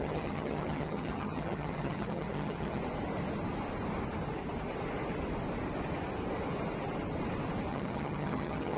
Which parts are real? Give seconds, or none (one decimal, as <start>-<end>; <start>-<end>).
2.8-7.7